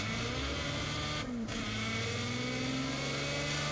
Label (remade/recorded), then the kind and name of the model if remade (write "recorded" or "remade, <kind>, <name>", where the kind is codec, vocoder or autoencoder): recorded